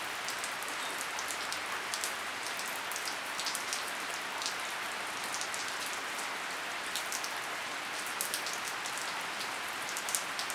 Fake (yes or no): no